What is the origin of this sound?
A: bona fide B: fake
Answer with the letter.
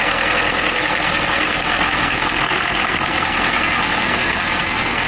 B